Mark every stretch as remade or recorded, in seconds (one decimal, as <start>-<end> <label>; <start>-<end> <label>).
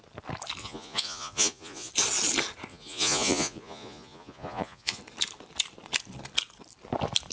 0.0-0.6 recorded; 0.6-1.9 remade; 1.9-2.7 recorded; 2.7-5.0 remade; 5.0-7.3 recorded